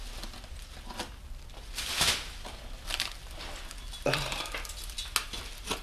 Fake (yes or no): no